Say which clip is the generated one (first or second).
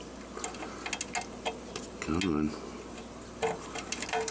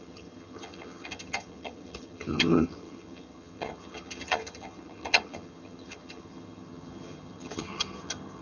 second